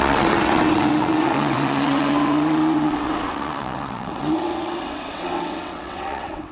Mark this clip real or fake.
fake